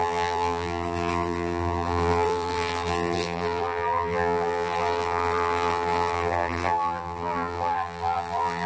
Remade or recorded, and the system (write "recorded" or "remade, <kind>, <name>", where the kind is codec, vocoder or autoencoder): remade, vocoder, BigVGAN v2